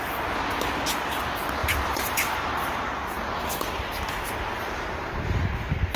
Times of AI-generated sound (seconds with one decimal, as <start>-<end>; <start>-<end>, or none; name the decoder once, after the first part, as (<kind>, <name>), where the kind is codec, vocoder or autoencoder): 1.6-5.2 (vocoder, BigVGAN v2)